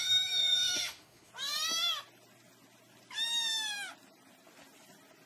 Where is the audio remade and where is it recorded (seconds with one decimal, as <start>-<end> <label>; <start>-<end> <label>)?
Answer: 0.0-1.3 remade; 1.3-5.3 recorded